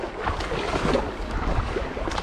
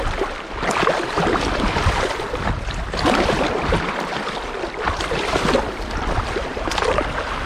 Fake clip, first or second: first